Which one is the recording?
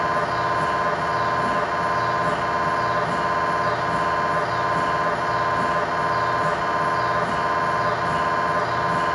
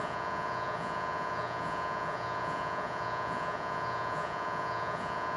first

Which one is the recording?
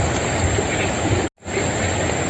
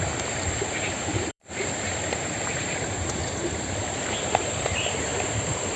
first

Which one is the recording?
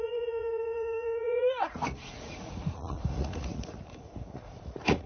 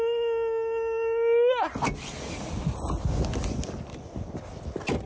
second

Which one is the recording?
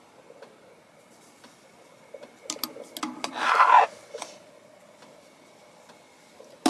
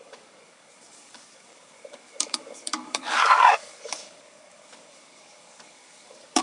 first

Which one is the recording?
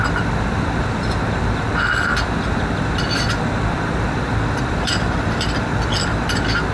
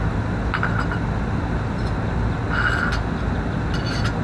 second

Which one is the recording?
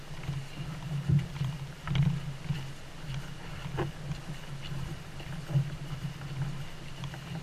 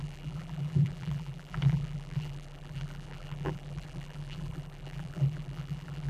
first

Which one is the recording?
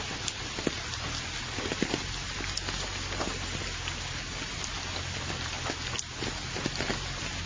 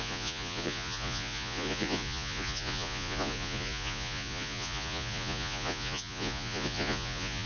first